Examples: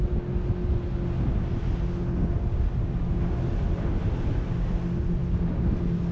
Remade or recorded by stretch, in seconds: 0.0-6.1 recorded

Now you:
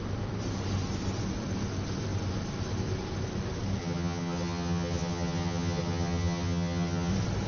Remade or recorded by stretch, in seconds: 0.0-3.8 recorded; 3.8-7.1 remade; 7.1-7.5 recorded

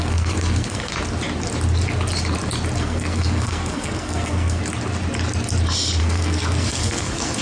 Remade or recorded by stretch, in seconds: 0.0-0.9 remade; 0.9-2.8 recorded; 2.8-4.6 remade; 4.6-6.0 recorded; 6.0-7.4 remade

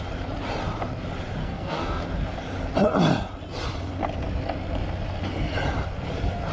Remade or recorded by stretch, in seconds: 0.0-1.4 recorded; 1.4-2.0 remade; 2.0-6.5 recorded

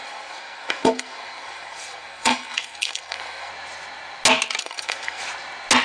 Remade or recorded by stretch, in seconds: 0.0-3.5 remade; 3.5-4.6 recorded; 4.6-5.2 remade; 5.2-5.8 recorded

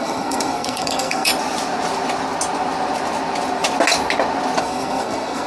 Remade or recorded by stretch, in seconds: 0.0-1.3 remade; 1.3-4.6 recorded; 4.6-5.5 remade

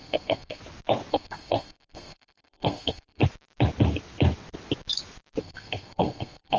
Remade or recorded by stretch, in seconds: 0.0-0.6 remade; 0.6-1.1 recorded; 1.1-3.2 remade; 3.2-5.4 recorded; 5.4-6.6 remade